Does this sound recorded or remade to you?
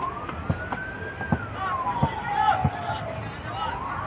recorded